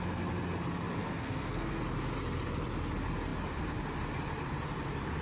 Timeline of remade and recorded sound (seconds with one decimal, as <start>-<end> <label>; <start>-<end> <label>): 0.0-1.0 recorded; 1.0-1.8 remade; 1.8-5.2 recorded